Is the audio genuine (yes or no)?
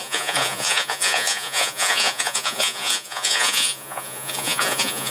no